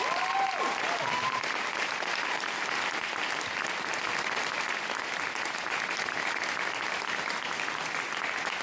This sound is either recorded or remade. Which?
recorded